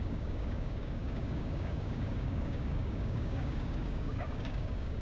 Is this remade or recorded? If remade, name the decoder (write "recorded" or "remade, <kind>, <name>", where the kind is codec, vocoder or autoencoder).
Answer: remade, codec, DAC